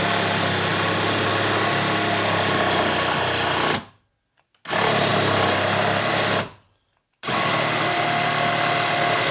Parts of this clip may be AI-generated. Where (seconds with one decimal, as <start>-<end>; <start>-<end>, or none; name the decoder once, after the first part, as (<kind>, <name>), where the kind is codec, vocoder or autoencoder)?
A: none